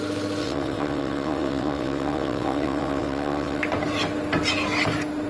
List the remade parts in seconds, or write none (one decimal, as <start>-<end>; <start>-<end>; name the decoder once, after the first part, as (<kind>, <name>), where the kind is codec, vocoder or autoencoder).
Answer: 0.4-3.6 (vocoder, WaveNeXt)